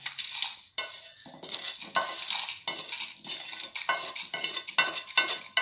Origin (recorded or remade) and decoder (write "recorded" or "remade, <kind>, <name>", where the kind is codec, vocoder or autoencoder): recorded